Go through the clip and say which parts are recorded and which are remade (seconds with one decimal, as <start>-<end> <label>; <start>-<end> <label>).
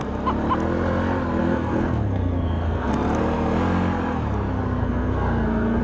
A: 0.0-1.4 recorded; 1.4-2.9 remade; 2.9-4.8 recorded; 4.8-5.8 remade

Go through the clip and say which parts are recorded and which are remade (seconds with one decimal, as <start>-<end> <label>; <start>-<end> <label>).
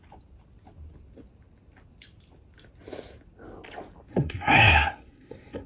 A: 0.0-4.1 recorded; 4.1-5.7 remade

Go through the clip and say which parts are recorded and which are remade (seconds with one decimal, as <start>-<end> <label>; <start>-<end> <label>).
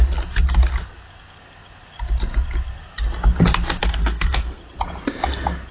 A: 0.0-3.8 recorded; 3.8-4.6 remade; 4.6-5.7 recorded